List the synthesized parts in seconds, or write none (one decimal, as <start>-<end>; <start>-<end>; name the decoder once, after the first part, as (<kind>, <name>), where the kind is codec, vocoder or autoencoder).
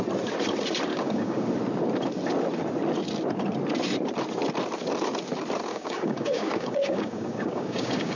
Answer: 0.9-1.5 (codec, DAC); 5.7-8.2